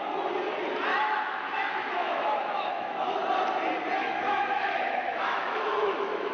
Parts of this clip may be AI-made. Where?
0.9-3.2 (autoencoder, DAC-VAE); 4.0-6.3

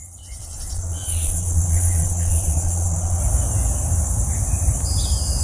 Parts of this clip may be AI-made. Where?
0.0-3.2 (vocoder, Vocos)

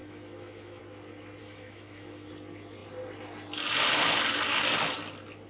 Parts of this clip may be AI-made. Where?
0.0-0.8 (autoencoder, DAC-VAE); 1.4-2.3

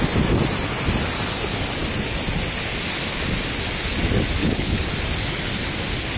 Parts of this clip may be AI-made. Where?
4.4-4.9 (codec, HILCodec)

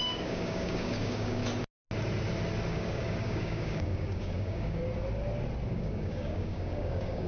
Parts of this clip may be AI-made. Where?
0.0-1.4 (codec, DAC); 2.7-4.8; 5.7-7.3

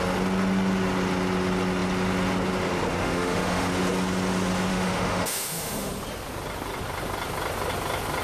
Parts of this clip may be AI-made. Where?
3.0-3.7 (autoencoder, DAC-VAE); 4.7-5.9

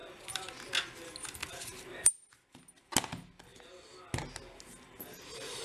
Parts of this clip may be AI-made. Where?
0.0-0.5 (vocoder, BigVGAN v2); 1.4-2.1